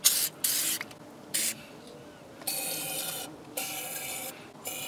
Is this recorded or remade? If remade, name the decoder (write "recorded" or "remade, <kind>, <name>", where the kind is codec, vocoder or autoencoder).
recorded